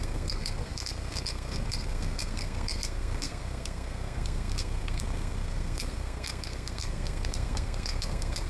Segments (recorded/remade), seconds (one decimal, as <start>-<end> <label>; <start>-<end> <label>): 0.0-8.5 remade